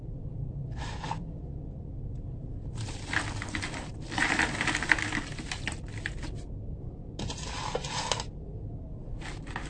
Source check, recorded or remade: remade